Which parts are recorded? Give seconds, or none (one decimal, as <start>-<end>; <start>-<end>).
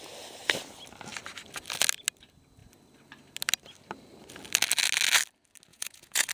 0.0-5.7